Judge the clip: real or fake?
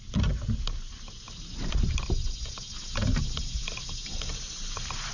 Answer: real